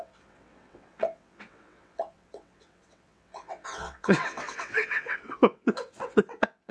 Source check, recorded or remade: remade